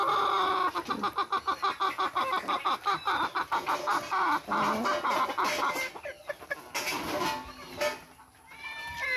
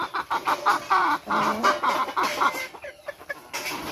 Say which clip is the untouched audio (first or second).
first